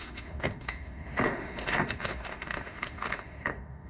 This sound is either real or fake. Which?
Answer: fake